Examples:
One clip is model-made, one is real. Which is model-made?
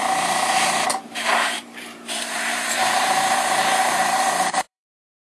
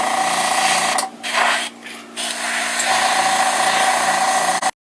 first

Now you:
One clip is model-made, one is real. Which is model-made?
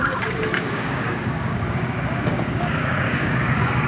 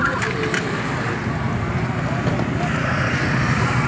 first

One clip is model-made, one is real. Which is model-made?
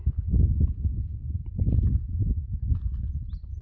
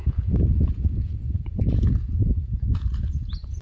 second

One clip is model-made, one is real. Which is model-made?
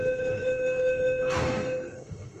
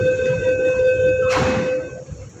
first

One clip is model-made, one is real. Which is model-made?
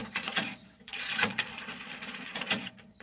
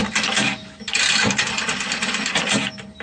first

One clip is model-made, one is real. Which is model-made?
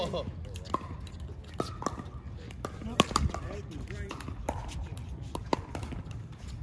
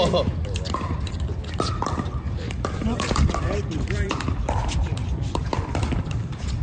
second